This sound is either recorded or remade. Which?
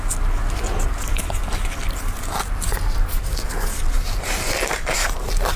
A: recorded